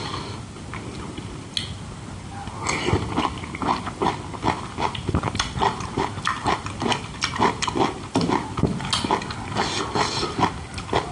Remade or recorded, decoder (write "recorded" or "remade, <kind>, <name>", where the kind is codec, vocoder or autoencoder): recorded